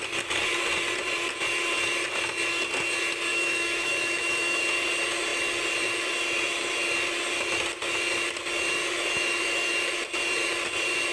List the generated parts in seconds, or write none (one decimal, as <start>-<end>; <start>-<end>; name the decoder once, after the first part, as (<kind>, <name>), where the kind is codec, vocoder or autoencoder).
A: 3.3-4.6 (autoencoder, DAC-VAE)